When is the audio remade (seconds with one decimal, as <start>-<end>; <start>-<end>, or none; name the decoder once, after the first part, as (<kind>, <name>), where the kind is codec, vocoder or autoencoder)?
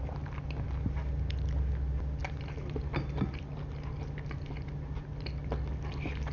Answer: none